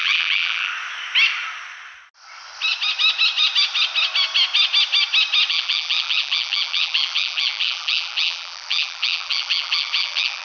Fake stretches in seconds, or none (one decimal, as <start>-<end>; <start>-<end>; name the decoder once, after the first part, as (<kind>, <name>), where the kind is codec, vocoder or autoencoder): 0.0-0.7 (vocoder, BigVGAN v2); 5.5-10.4